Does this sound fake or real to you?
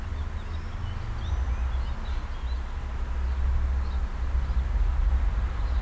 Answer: real